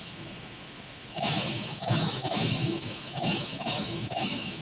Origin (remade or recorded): remade